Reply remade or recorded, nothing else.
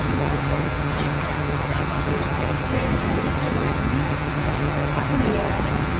remade